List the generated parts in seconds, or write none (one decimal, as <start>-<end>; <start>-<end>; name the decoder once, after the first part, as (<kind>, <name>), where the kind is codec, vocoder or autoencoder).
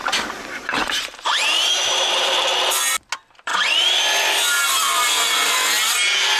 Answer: 0.0-2.3 (vocoder, BigVGAN v2)